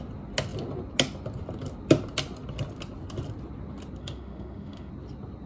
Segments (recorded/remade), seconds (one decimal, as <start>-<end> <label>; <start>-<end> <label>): 0.0-4.0 recorded; 4.0-4.9 remade; 4.9-5.5 recorded